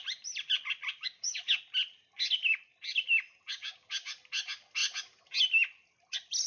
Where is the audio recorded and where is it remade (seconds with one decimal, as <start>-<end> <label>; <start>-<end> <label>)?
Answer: 0.0-0.9 recorded; 0.9-1.4 remade; 1.4-3.5 recorded; 3.5-4.1 remade; 4.1-6.5 recorded